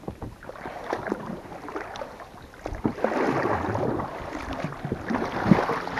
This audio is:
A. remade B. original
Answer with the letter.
B